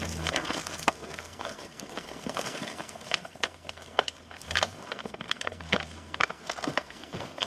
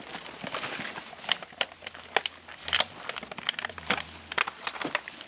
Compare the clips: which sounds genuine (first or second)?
second